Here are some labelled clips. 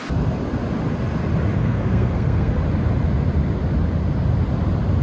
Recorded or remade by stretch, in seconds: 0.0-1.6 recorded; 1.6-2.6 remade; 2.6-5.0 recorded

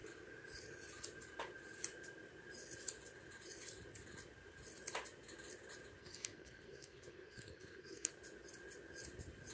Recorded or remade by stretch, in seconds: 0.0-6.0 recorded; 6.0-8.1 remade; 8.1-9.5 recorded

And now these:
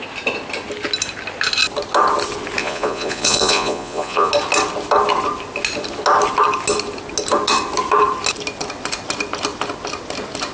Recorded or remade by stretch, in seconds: 0.0-2.6 recorded; 2.6-4.3 remade; 4.3-10.5 recorded

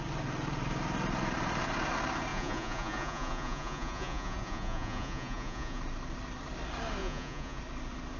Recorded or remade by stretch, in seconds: 0.0-2.3 recorded; 2.3-5.8 remade; 5.8-7.0 recorded; 7.0-7.6 remade; 7.6-8.2 recorded

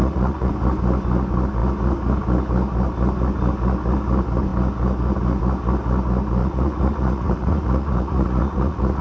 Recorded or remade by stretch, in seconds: 0.0-0.5 remade; 0.5-6.4 recorded; 6.4-9.0 remade

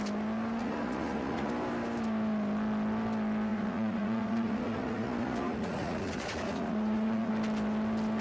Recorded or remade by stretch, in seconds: 0.0-0.6 recorded; 0.6-1.5 remade; 1.5-3.5 recorded; 3.5-7.3 remade; 7.3-8.2 recorded

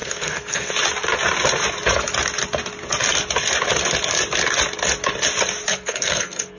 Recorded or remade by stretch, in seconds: 0.0-0.7 remade; 0.7-5.7 recorded; 5.7-6.6 remade

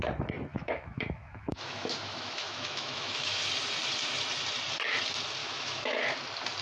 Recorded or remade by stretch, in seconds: 0.0-0.5 recorded; 0.5-3.4 remade; 3.4-5.4 recorded; 5.4-6.0 remade; 6.0-6.6 recorded